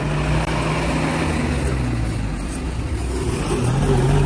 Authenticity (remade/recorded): recorded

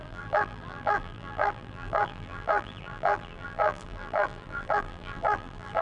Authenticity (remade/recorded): remade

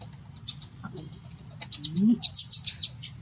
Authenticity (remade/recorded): recorded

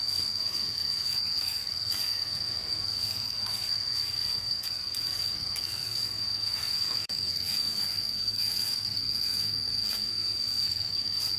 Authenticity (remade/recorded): remade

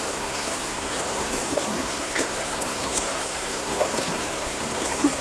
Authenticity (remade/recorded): remade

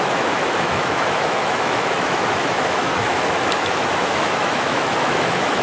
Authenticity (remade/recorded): remade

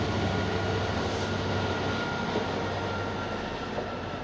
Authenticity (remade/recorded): recorded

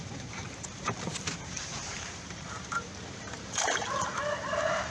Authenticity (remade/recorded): remade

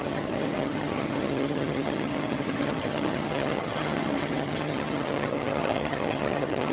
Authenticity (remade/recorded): remade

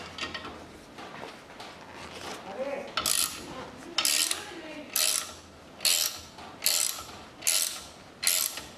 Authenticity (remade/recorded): recorded